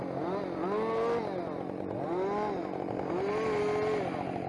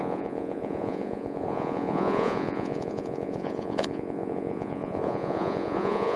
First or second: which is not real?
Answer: second